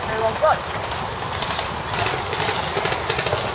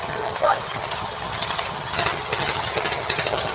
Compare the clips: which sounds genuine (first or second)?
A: first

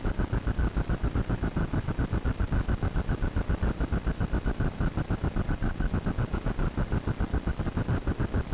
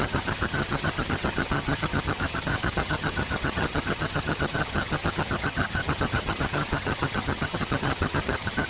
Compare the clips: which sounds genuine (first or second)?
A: first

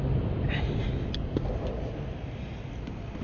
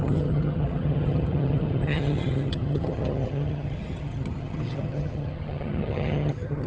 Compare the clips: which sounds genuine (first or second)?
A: first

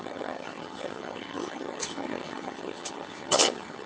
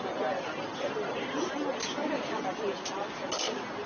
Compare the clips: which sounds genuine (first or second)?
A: second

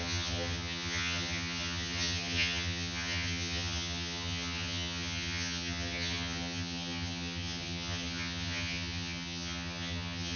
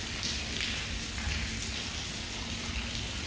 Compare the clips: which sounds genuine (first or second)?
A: second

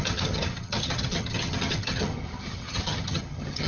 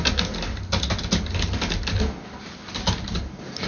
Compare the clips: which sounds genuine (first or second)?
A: second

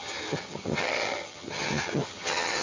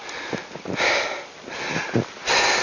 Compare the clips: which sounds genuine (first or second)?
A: second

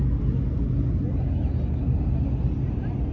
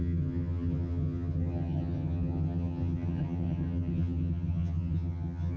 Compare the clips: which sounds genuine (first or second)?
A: first